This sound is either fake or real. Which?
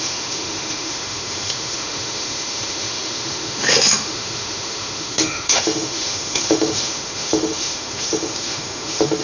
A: fake